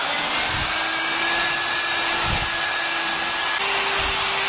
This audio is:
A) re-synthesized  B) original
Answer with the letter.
B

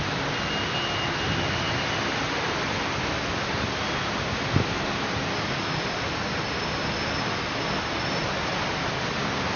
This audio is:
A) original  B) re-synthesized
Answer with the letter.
A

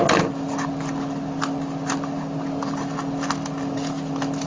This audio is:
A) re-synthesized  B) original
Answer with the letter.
B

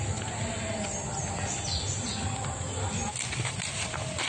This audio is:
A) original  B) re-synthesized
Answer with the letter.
A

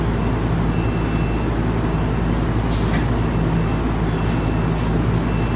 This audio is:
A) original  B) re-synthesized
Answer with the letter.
A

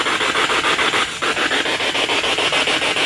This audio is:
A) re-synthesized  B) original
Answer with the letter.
B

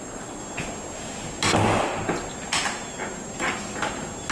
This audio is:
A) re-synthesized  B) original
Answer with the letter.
B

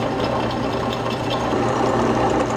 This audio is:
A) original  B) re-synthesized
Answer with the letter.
B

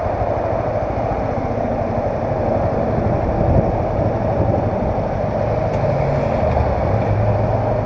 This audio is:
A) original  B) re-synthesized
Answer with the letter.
A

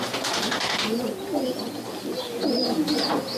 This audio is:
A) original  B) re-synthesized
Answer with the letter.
A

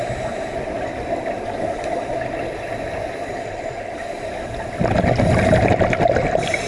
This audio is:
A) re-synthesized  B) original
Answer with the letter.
B